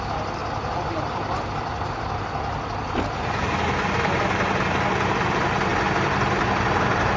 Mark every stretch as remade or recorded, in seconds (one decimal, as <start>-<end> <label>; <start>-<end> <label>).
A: 0.0-7.2 recorded